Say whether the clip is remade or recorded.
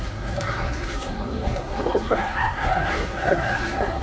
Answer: remade